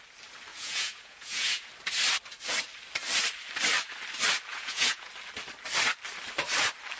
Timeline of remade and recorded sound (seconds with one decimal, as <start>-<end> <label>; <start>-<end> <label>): 0.0-0.5 recorded; 0.5-1.7 remade; 1.7-4.5 recorded; 4.5-5.1 remade; 5.1-7.0 recorded